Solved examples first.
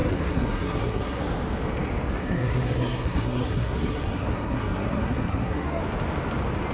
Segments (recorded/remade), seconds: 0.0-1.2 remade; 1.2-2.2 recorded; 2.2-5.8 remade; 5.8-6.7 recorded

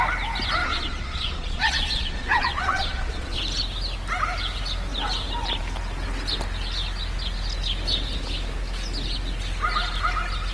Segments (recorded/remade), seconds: 0.0-0.6 recorded; 0.6-3.4 remade; 3.4-10.5 recorded

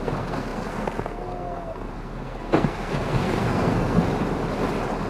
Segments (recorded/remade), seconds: 0.0-4.1 remade; 4.1-5.1 recorded

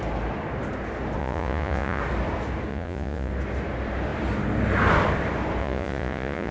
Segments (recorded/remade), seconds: 0.0-1.2 recorded; 1.2-2.0 remade; 2.0-2.7 recorded; 2.7-3.3 remade; 3.3-5.6 recorded; 5.6-6.5 remade